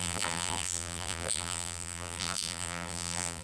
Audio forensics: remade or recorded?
remade